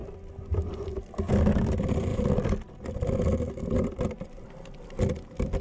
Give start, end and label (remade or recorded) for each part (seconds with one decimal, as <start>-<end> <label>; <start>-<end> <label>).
0.0-2.1 recorded; 2.1-5.6 remade